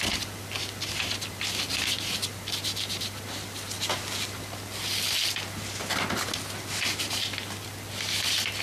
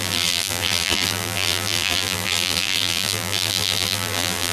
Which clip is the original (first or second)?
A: first